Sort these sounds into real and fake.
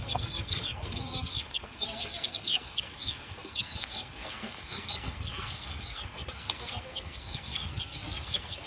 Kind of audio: fake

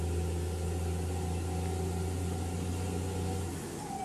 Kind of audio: real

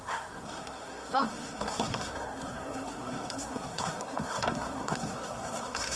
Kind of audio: fake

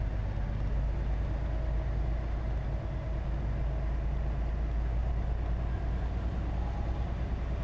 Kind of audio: real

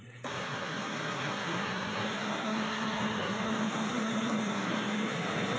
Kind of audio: fake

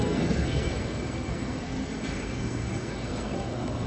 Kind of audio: fake